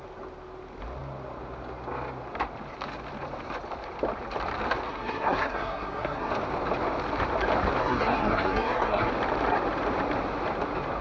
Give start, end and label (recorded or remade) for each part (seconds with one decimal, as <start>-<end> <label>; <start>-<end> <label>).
0.0-4.9 recorded; 4.9-6.3 remade; 6.3-7.8 recorded; 7.8-9.1 remade; 9.1-11.0 recorded